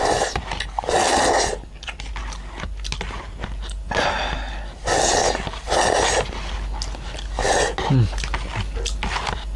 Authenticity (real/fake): real